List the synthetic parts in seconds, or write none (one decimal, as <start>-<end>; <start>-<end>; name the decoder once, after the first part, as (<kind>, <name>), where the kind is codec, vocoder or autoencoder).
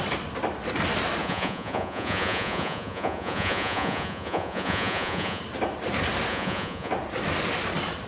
1.2-5.4 (vocoder, Vocos); 6.3-6.9